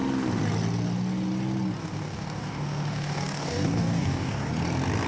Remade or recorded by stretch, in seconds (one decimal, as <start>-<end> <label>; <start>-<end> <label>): 0.0-1.8 recorded; 1.8-4.5 remade; 4.5-5.1 recorded